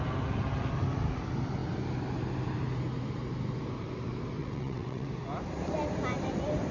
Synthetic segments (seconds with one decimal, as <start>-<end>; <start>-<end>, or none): 4.4-5.1